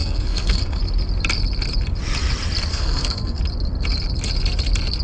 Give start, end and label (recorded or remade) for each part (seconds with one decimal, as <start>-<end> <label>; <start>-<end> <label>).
0.0-0.8 remade; 0.8-2.7 recorded; 2.7-3.4 remade; 3.4-5.0 recorded